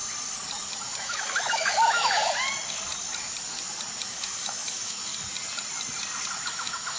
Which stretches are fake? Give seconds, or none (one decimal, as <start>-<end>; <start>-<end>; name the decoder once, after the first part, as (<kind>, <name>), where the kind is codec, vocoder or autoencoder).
1.0-2.2 (autoencoder, DAC-VAE); 4.0-5.1; 6.5-7.0